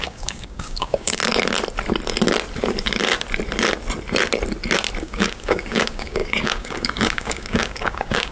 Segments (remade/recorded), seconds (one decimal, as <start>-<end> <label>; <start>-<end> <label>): 0.0-1.2 remade; 1.2-5.0 recorded; 5.0-8.3 remade